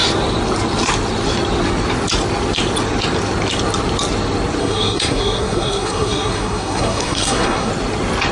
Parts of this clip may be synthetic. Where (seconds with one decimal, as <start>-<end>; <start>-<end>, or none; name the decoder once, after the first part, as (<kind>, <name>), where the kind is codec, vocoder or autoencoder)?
4.6-7.7 (codec, SNAC)